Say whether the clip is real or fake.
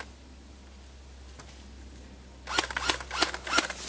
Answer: real